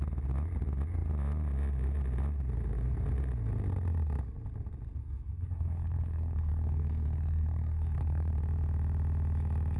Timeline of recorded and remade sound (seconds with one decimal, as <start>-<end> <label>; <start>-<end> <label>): 0.0-5.0 recorded; 5.0-8.3 remade; 8.3-9.8 recorded

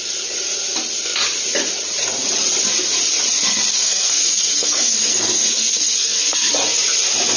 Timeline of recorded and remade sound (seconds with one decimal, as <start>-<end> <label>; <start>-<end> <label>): 0.0-3.7 recorded; 3.7-6.5 remade; 6.5-7.4 recorded

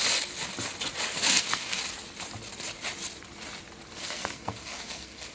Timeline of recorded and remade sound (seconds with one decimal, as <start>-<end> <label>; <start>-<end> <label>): 0.0-1.1 recorded; 1.1-1.8 remade; 1.8-4.0 recorded; 4.0-5.3 remade

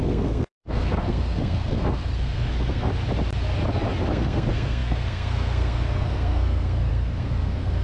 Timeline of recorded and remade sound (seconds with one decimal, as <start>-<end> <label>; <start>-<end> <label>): 0.0-2.9 remade; 2.9-4.1 recorded; 4.1-7.8 remade

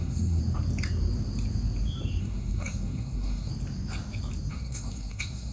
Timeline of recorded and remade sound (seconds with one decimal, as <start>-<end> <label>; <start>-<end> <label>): 0.0-0.4 remade; 0.4-2.2 recorded; 2.2-3.5 remade; 3.5-4.5 recorded; 4.5-5.5 remade

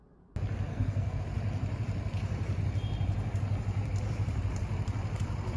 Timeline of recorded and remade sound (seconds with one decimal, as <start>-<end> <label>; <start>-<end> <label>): 0.0-0.7 recorded; 0.7-1.2 remade; 1.2-5.6 recorded